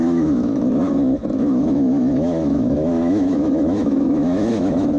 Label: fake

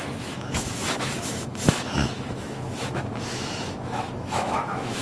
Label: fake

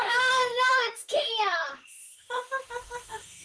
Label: fake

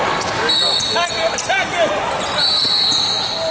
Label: real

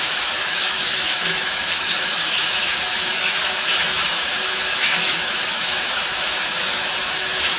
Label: fake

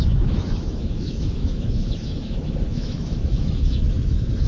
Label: fake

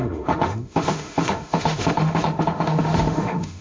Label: fake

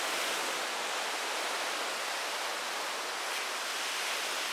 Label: real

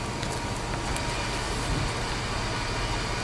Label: real